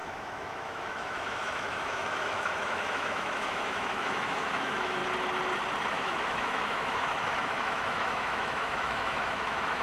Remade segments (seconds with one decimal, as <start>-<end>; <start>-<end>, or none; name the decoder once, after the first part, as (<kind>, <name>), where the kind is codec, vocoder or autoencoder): 0.0-5.0 (autoencoder, DAC-VAE); 5.9-9.8